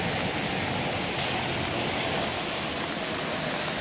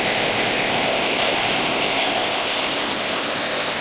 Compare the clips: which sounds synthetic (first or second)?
second